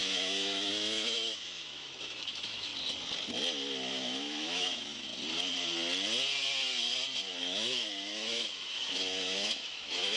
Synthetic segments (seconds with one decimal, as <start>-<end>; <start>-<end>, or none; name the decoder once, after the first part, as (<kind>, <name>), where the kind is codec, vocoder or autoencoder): 0.0-2.7 (autoencoder, DAC-VAE); 3.9-5.1; 7.4-10.2